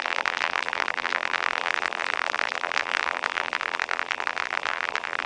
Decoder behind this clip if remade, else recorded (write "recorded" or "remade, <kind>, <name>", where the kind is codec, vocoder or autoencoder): remade, vocoder, BigVGAN v2